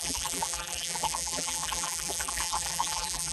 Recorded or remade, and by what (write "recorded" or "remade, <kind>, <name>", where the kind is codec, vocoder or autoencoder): remade, vocoder, BigVGAN v2